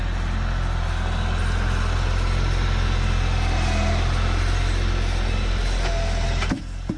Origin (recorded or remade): recorded